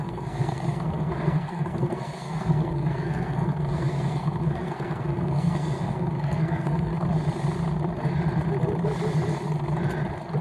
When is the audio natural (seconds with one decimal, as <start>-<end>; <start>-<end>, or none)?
6.9-10.4